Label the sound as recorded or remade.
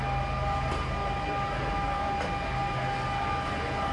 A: recorded